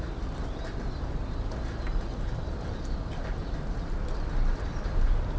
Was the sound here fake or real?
real